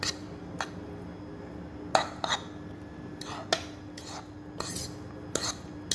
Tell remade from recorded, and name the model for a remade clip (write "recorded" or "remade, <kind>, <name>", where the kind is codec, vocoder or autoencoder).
recorded